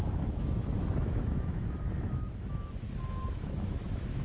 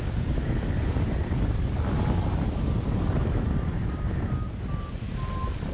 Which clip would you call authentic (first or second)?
second